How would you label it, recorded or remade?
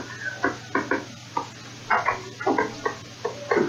recorded